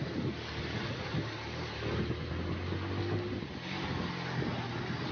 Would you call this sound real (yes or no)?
yes